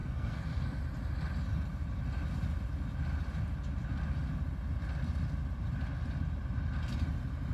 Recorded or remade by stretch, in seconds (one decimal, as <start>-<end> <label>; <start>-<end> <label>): 0.0-0.8 remade; 0.8-7.5 recorded